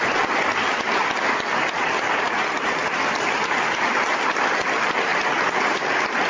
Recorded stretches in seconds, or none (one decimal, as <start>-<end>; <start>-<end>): 0.0-6.3